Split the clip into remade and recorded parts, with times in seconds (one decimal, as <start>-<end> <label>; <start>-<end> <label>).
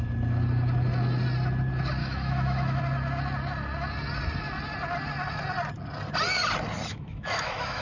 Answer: 0.0-2.0 recorded; 2.0-2.8 remade; 2.8-6.9 recorded; 6.9-7.8 remade